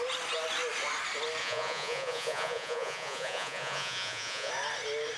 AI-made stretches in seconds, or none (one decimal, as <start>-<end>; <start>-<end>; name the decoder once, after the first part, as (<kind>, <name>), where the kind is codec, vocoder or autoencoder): 1.4-4.5 (vocoder, Vocos)